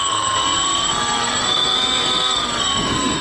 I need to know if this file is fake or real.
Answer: fake